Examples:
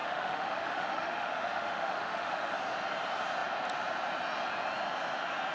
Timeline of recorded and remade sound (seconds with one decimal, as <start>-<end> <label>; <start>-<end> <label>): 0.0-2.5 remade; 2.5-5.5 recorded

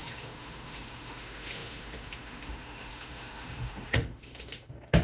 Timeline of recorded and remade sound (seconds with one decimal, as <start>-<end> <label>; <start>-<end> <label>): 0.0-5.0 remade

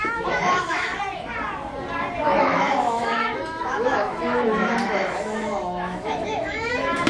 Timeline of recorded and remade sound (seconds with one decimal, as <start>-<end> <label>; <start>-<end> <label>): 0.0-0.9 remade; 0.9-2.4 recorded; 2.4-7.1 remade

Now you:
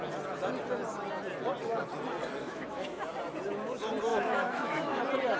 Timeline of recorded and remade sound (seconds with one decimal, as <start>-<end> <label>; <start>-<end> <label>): 0.0-2.4 recorded; 2.4-3.0 remade; 3.0-4.1 recorded; 4.1-5.0 remade; 5.0-5.4 recorded